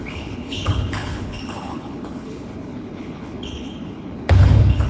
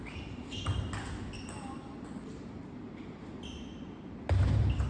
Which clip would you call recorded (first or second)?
second